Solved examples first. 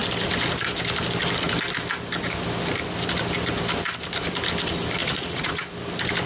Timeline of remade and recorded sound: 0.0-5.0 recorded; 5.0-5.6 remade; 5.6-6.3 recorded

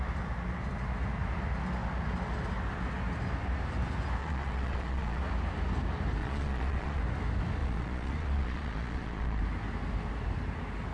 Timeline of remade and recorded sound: 0.0-4.2 recorded; 4.2-5.2 remade; 5.2-6.2 recorded; 6.2-7.0 remade; 7.0-7.6 recorded; 7.6-9.4 remade; 9.4-10.9 recorded

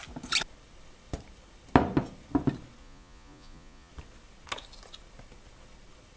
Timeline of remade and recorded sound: 0.0-2.8 recorded; 2.8-3.9 remade; 3.9-6.2 recorded

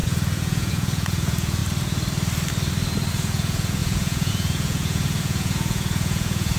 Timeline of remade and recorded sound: 0.0-1.6 remade; 1.6-3.1 recorded; 3.1-6.6 remade